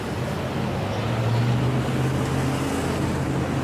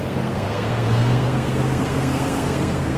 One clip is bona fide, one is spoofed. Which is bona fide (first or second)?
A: first